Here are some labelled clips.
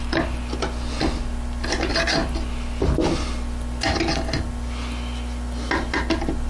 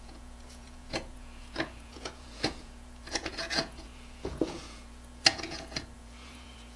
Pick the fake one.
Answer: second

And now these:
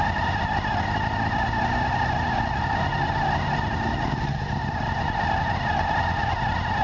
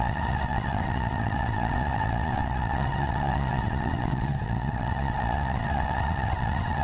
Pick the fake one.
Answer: second